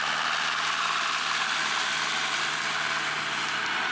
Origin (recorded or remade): recorded